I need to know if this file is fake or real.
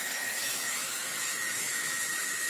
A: fake